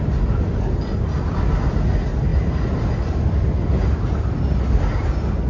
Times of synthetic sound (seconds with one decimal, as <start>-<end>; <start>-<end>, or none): none